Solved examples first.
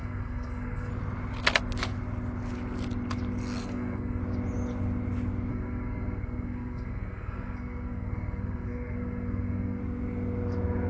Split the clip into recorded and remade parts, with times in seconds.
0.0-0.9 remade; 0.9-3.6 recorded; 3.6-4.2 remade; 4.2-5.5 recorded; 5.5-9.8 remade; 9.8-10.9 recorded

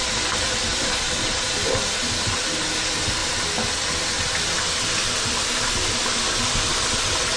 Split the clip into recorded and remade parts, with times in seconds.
0.0-0.7 remade; 0.7-2.4 recorded; 2.4-3.2 remade; 3.2-5.2 recorded; 5.2-7.4 remade

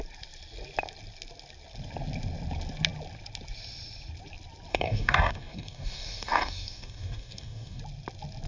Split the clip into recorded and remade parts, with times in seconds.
0.0-4.7 recorded; 4.7-7.8 remade; 7.8-8.5 recorded

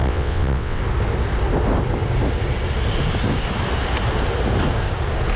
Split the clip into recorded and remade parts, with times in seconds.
0.0-0.8 remade; 0.8-5.4 recorded

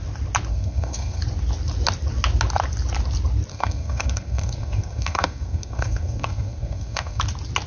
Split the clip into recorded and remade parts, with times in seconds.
0.0-0.5 recorded; 0.5-1.2 remade; 1.2-3.5 recorded; 3.5-7.2 remade; 7.2-7.7 recorded

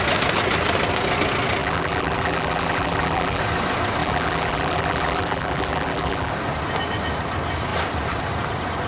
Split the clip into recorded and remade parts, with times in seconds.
0.0-1.6 recorded; 1.6-3.4 remade; 3.4-4.0 recorded; 4.0-6.3 remade; 6.3-8.9 recorded